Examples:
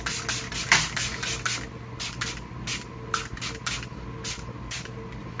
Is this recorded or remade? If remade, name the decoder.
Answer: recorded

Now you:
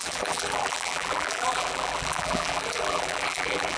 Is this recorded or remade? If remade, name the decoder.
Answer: remade, vocoder, BigVGAN v2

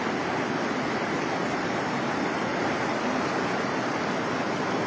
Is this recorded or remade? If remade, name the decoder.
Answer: recorded